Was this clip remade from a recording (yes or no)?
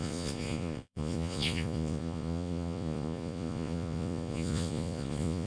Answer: yes